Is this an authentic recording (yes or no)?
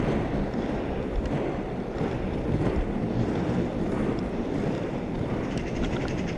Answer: no